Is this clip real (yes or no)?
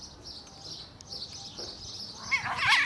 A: yes